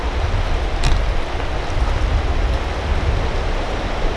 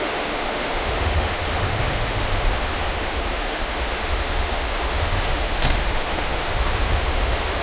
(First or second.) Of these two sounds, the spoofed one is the second